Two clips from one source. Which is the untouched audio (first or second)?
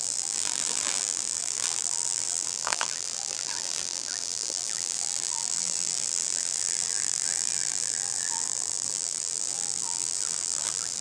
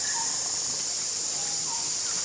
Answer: second